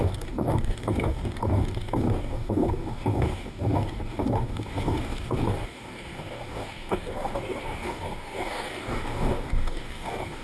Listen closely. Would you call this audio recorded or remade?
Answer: remade